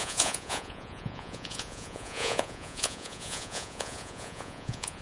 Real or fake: fake